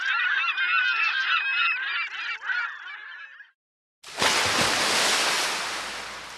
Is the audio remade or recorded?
recorded